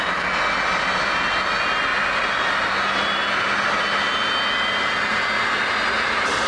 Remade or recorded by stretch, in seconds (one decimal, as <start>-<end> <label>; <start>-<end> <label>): 0.0-1.9 recorded; 1.9-2.7 remade; 2.7-6.5 recorded